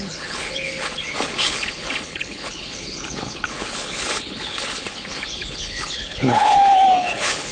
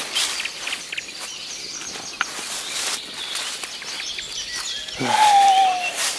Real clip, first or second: second